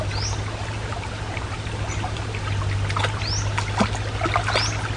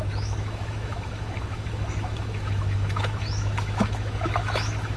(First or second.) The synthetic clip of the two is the second